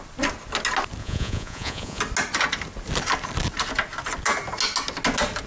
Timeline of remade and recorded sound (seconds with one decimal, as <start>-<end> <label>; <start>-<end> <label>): 0.0-1.0 recorded; 1.0-2.0 remade; 2.0-5.5 recorded